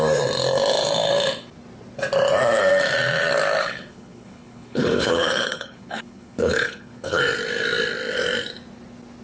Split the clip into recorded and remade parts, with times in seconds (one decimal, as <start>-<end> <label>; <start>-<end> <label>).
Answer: 0.0-3.6 recorded; 3.6-7.2 remade; 7.2-9.2 recorded

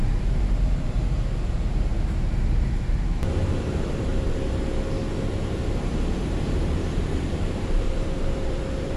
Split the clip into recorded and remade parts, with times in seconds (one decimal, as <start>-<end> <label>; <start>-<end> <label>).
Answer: 0.0-4.1 remade; 4.1-5.7 recorded; 5.7-9.0 remade

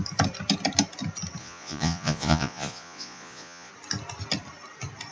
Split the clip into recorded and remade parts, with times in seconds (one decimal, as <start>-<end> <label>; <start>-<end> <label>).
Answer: 0.0-1.4 recorded; 1.4-3.7 remade; 3.7-5.1 recorded

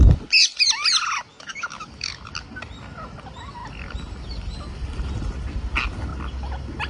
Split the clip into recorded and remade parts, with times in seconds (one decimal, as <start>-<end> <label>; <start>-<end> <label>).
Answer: 0.0-1.3 recorded; 1.3-2.1 remade; 2.1-6.9 recorded

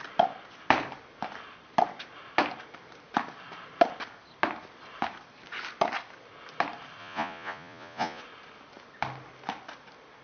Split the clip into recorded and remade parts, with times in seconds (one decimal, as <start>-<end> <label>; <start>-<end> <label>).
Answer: 0.0-7.0 recorded; 7.0-8.2 remade; 8.2-10.2 recorded

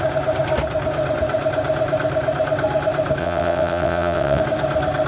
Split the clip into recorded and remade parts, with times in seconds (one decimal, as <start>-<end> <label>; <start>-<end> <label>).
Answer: 0.0-3.2 recorded; 3.2-4.4 remade; 4.4-5.1 recorded

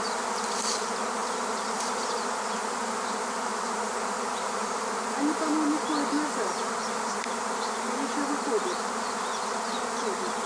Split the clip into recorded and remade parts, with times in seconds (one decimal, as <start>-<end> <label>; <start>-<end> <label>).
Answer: 0.0-10.5 recorded